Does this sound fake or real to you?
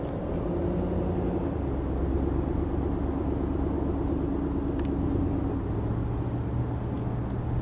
real